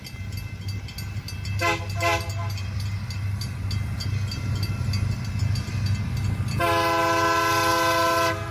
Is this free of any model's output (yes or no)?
yes